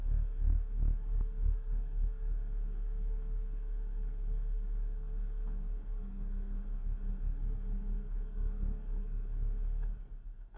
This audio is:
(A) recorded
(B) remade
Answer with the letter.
B